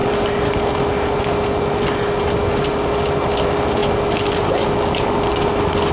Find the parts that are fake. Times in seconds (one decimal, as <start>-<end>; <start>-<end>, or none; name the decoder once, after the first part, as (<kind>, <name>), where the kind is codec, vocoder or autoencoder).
none

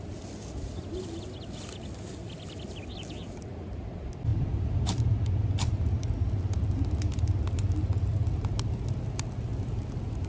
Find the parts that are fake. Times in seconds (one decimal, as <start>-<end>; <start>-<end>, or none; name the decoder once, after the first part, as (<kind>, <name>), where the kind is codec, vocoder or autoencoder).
none

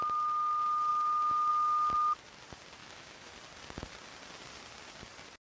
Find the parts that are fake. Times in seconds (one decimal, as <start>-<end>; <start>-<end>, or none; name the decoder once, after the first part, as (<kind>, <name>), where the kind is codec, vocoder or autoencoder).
2.8-3.3 (autoencoder, DAC-VAE)

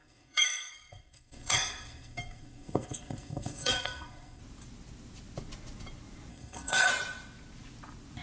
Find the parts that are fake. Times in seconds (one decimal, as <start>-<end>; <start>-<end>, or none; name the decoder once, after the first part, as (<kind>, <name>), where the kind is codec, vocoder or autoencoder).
0.0-4.4 (codec, SNAC); 6.3-6.9